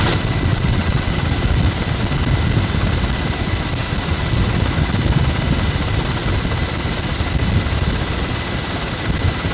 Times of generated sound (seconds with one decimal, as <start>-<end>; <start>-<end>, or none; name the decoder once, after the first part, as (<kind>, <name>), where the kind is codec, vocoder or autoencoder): 0.5-1.1 (vocoder, WaveNeXt)